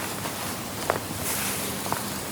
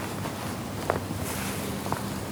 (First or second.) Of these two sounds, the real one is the second